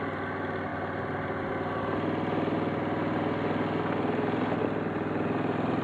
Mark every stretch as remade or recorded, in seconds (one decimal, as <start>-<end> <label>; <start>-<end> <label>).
0.0-0.7 recorded; 0.7-1.8 remade; 1.8-5.8 recorded